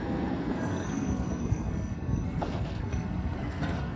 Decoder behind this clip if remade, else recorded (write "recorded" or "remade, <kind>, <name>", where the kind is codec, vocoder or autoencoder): remade, codec, SNAC